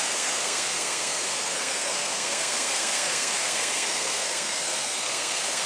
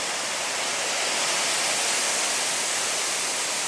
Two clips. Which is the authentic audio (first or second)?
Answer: second